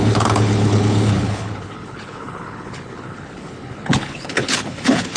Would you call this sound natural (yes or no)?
no